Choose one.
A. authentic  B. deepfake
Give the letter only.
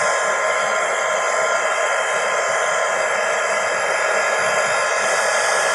A